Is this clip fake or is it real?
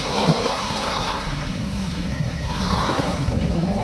fake